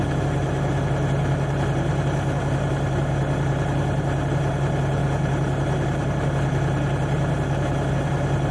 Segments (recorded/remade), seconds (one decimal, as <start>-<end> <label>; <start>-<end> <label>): 0.0-5.0 remade; 5.0-7.9 recorded; 7.9-8.5 remade